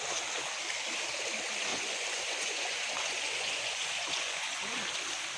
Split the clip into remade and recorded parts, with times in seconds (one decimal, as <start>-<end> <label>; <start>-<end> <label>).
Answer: 0.0-1.7 recorded; 1.7-4.8 remade; 4.8-5.4 recorded